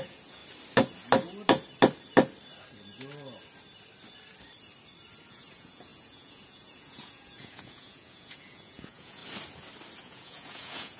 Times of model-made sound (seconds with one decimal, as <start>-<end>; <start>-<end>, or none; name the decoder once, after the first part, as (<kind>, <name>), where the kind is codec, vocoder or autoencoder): 0.0-0.4 (vocoder, Vocos); 5.3-9.2; 10.0-11.0